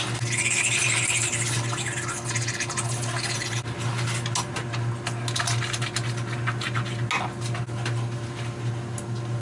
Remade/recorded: recorded